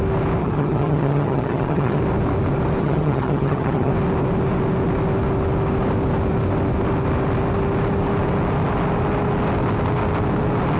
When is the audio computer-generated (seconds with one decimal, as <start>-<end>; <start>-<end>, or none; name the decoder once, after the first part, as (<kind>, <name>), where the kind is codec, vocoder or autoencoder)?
0.4-2.0 (vocoder, HiFi-GAN); 2.8-3.9